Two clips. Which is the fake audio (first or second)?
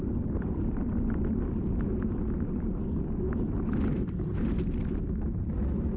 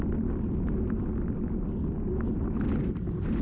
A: first